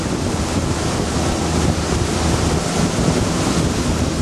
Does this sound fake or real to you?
fake